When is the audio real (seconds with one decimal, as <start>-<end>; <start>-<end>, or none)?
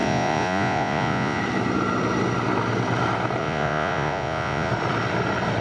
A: 1.4-3.4; 4.7-5.6